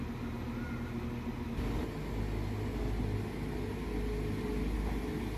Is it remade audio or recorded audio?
recorded